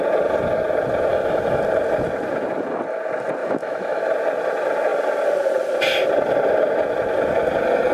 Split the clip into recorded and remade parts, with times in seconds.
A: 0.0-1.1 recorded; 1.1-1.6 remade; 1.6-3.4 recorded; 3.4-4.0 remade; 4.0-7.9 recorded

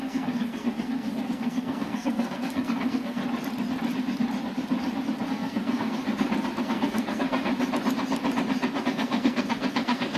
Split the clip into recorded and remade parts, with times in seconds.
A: 0.0-3.2 remade; 3.2-5.3 recorded; 5.3-6.0 remade; 6.0-6.6 recorded; 6.6-7.5 remade; 7.5-8.8 recorded; 8.8-10.2 remade